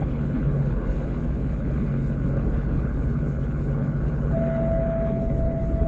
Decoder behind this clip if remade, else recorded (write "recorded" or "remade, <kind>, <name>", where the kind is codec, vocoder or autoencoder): remade, codec, HILCodec